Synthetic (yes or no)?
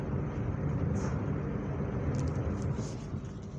no